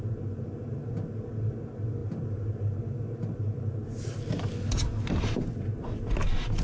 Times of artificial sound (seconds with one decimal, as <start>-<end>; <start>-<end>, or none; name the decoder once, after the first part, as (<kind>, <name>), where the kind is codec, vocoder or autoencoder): none